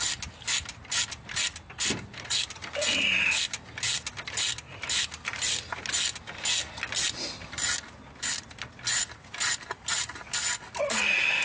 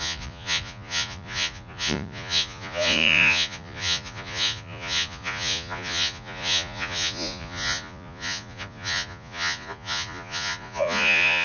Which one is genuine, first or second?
first